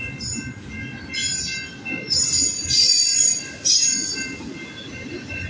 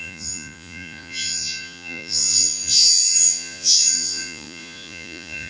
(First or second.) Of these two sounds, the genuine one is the first